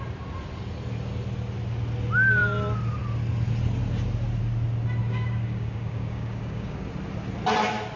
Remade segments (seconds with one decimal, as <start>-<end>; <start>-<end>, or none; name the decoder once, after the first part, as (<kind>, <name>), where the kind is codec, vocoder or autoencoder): 5.0-6.9 (codec, DAC)